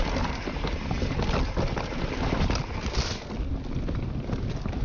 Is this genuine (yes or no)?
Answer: yes